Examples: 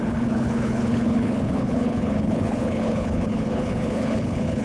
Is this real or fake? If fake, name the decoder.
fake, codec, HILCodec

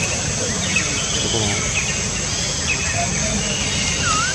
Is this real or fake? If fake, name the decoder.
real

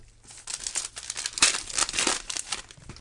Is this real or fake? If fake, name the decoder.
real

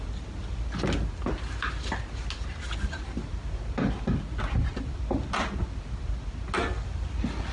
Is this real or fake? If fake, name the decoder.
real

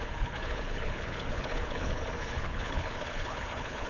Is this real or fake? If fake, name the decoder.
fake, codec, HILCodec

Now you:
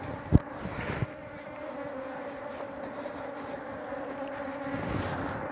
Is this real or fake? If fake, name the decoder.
real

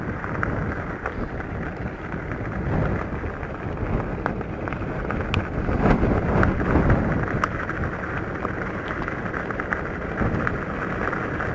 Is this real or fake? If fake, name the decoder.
real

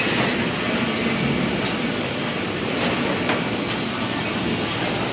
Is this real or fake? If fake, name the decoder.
real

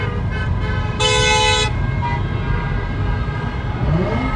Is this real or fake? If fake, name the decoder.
real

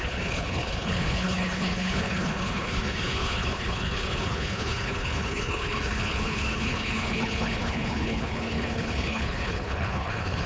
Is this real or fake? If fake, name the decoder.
fake, codec, HILCodec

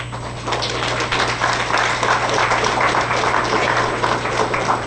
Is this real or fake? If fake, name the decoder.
real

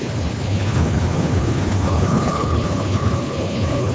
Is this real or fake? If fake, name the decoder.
fake, codec, HILCodec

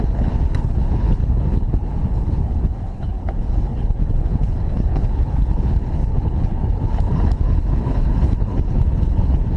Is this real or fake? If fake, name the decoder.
fake, codec, HILCodec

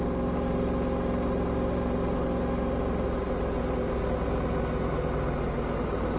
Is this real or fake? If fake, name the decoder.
real